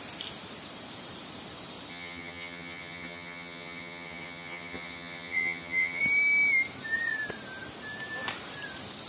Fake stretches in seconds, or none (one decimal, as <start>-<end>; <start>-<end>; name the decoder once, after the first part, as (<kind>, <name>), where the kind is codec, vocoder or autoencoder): 1.9-6.0 (vocoder, HiFi-GAN)